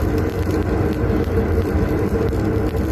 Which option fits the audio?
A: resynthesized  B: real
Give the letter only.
A